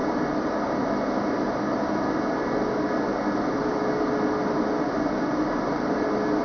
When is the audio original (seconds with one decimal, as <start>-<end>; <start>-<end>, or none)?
0.0-6.4